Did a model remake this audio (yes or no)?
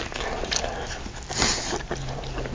no